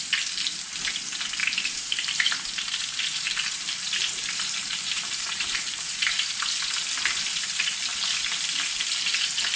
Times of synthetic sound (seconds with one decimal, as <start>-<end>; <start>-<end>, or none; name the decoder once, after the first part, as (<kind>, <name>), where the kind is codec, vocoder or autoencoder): 1.4-6.4 (vocoder, BigVGAN v2)